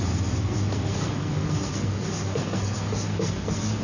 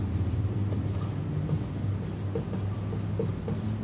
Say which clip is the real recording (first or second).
second